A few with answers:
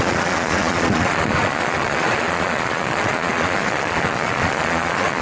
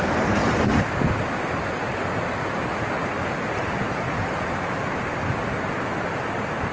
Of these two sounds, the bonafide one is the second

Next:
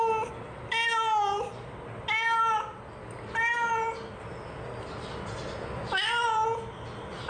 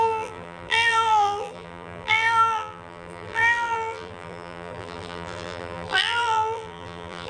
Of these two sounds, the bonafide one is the first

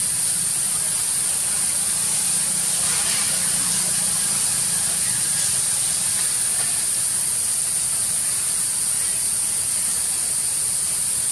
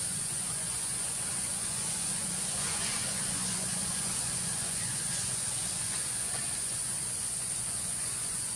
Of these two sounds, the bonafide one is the first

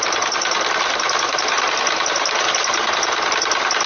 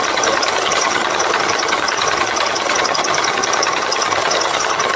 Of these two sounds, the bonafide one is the first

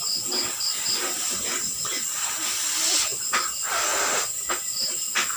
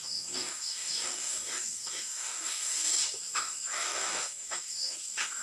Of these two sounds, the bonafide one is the first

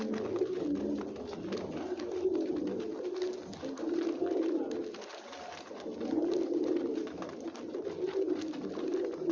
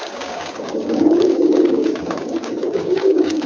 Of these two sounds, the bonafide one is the first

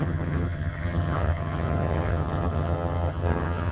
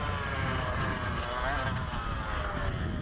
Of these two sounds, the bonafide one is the second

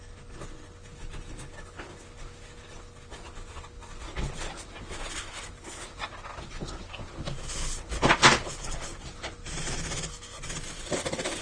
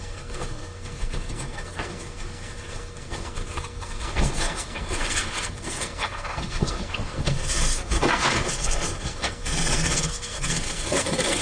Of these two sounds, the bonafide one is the first